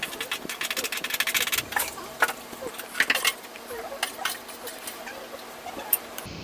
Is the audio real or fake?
real